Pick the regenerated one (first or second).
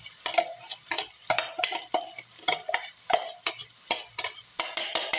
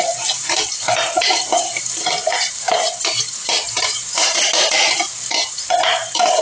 second